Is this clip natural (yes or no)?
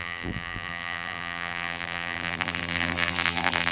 no